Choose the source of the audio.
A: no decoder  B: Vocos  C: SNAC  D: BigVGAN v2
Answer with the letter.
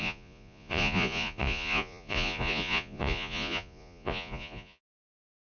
B